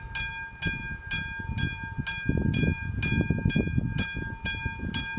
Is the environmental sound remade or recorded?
recorded